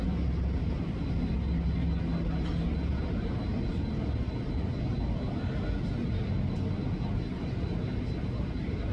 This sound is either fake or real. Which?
real